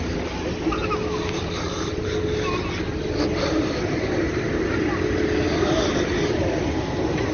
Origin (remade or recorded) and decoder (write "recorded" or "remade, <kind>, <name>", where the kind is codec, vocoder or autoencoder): recorded